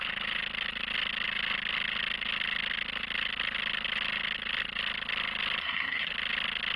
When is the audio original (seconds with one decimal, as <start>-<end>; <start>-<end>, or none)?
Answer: 0.0-5.6; 6.1-6.8